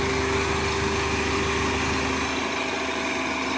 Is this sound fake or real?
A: real